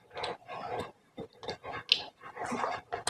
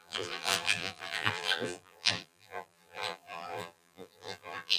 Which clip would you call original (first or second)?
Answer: first